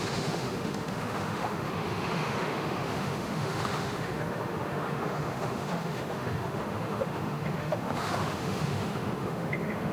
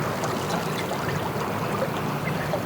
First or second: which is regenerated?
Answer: first